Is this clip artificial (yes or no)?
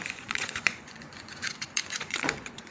yes